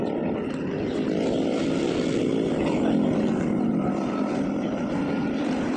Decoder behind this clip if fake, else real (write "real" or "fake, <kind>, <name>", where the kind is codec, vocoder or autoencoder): real